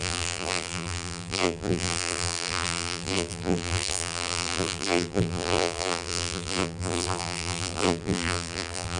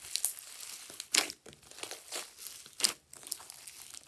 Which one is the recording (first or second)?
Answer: second